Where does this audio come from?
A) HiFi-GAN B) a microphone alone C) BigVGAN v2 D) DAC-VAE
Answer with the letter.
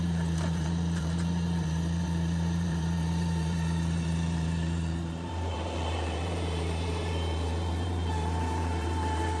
C